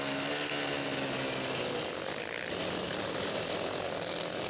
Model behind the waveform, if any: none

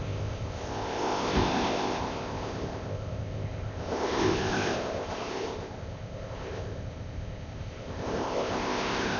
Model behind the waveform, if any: codec, ZipCodec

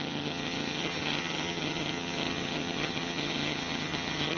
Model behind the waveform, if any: vocoder, HiFi-GAN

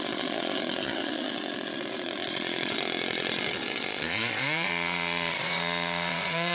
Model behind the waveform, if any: vocoder, Vocos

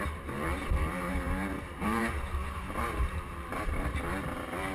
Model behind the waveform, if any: vocoder, BigVGAN v2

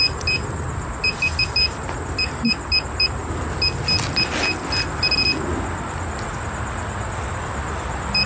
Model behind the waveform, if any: none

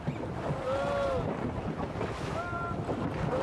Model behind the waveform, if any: none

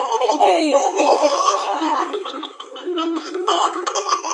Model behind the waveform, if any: codec, SNAC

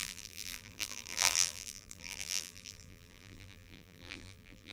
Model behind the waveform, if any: vocoder, BigVGAN v2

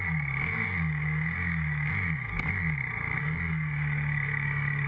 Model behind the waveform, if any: codec, DAC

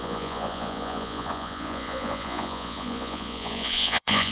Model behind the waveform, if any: vocoder, Vocos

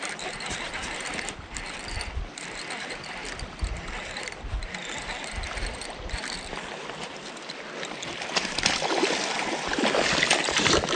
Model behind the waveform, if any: none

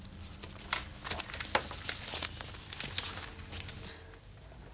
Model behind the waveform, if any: none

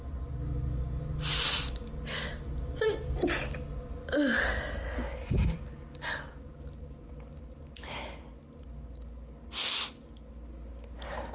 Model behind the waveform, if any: none